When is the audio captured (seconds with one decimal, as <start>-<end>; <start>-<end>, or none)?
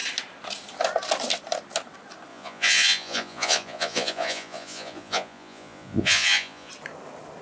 0.0-2.3; 6.7-7.4